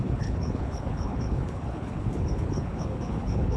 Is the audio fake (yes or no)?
yes